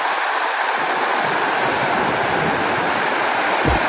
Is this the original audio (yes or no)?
yes